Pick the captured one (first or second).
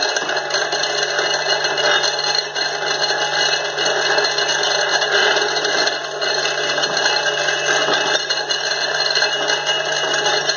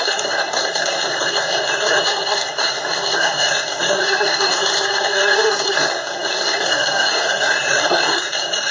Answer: first